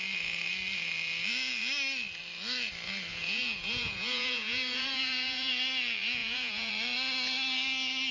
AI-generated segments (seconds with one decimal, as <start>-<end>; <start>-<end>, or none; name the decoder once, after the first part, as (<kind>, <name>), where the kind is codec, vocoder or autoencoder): 3.1-5.5 (vocoder, Vocos); 6.2-6.7